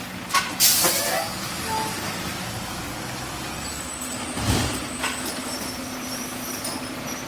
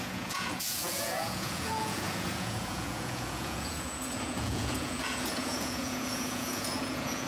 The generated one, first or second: second